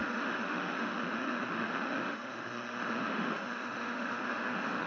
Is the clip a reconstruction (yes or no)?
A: yes